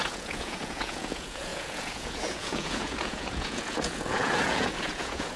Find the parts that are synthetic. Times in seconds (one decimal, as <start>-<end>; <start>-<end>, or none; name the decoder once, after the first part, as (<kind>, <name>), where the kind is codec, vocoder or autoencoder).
0.0-5.4 (vocoder, Vocos)